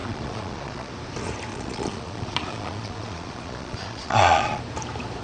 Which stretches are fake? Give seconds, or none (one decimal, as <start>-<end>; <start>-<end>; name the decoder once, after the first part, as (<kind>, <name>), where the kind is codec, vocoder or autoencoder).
0.0-0.9 (vocoder, Vocos); 1.5-4.6